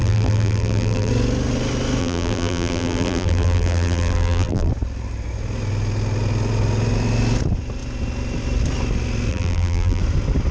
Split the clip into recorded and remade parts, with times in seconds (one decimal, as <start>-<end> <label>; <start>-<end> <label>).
0.0-1.1 remade; 1.1-2.0 recorded; 2.0-4.7 remade; 4.7-9.3 recorded; 9.3-10.0 remade; 10.0-10.5 recorded